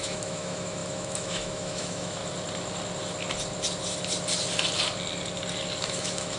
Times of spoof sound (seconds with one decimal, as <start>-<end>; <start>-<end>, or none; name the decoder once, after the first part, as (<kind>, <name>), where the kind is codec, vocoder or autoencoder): 0.0-2.2 (autoencoder, DAC-VAE); 5.8-6.4